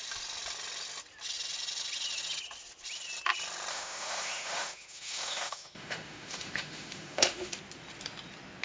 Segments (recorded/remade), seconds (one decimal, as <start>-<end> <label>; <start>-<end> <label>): 0.0-3.7 recorded; 3.7-7.5 remade; 7.5-8.6 recorded